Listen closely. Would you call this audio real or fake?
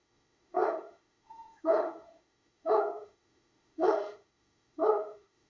fake